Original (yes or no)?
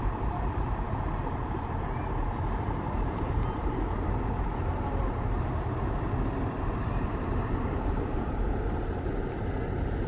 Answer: yes